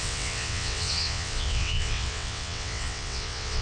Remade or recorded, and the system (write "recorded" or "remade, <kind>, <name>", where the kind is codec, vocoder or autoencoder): remade, vocoder, WaveNeXt